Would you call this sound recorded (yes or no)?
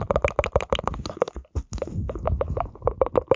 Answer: yes